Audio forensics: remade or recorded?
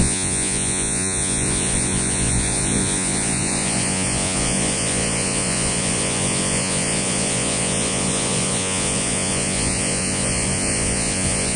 remade